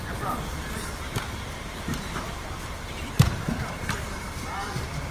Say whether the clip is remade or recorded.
remade